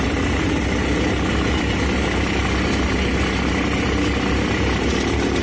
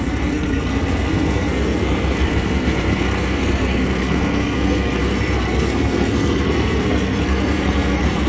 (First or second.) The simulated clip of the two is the second